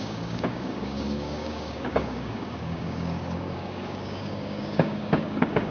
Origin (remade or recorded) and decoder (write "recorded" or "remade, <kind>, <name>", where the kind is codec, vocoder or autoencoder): remade, codec, DAC